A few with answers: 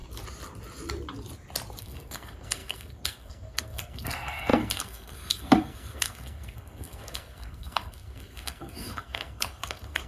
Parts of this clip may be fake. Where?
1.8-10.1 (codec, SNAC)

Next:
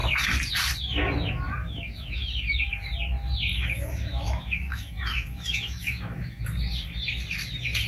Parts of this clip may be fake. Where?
1.6-2.7 (autoencoder, DAC-VAE); 3.5-6.4

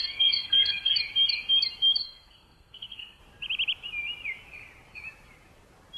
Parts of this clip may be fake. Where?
0.0-0.9 (codec, SNAC); 2.0-3.2

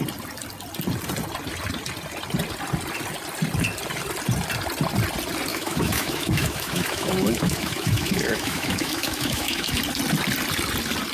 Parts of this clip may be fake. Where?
5.5-9.8 (autoencoder, DAC-VAE)

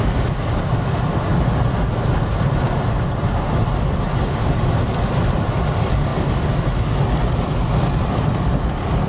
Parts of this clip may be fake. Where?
0.0-1.3 (vocoder, BigVGAN v2); 3.6-6.1; 7.5-9.1

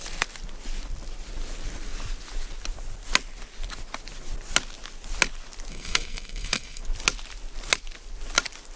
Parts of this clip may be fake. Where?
5.7-6.8 (codec, SNAC)

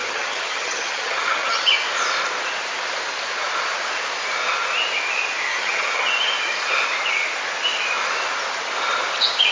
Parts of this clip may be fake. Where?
0.0-1.7 (vocoder, HiFi-GAN); 5.5-6.1

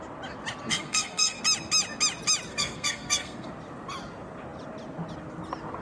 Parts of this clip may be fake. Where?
0.7-1.4 (codec, SNAC); 2.5-3.5